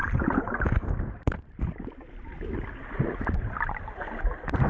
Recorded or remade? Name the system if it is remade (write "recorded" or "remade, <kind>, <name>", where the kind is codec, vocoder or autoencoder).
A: recorded